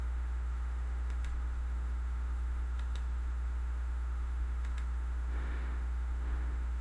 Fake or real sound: fake